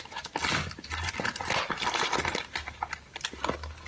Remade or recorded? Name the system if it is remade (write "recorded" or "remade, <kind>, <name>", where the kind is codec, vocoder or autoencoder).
recorded